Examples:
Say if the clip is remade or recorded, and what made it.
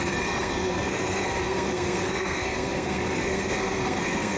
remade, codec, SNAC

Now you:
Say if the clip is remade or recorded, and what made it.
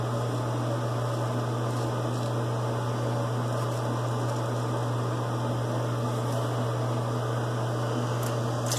recorded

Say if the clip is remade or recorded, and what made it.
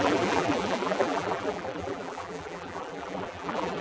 remade, vocoder, BigVGAN v2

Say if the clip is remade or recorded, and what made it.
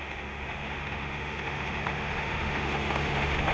remade, autoencoder, DAC-VAE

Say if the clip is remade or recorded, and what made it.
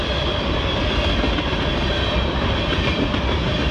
recorded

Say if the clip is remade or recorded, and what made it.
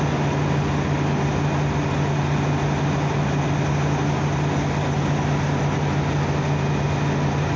recorded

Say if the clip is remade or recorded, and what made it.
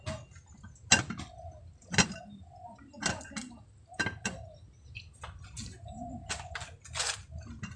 recorded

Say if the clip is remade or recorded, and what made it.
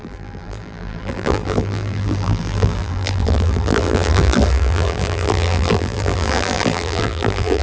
remade, vocoder, BigVGAN v2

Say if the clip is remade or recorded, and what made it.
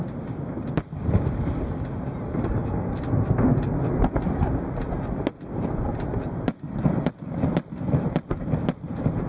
recorded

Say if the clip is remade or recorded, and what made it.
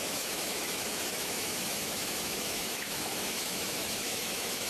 remade, autoencoder, DAC-VAE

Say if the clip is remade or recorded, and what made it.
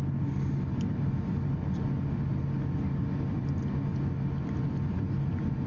recorded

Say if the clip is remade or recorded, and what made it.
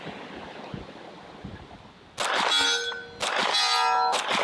recorded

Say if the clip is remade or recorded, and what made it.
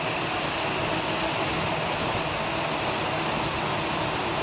recorded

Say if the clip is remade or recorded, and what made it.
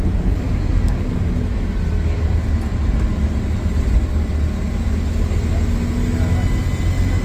recorded